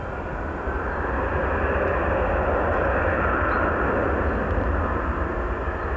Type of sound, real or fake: real